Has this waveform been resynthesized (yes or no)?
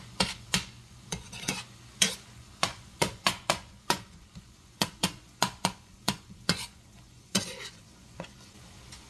yes